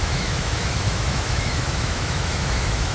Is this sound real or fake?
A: fake